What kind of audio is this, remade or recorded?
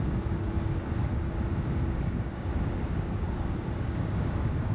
remade